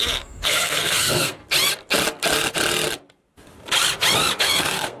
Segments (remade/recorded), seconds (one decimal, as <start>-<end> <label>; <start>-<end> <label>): 0.0-1.4 remade; 1.4-4.4 recorded; 4.4-5.0 remade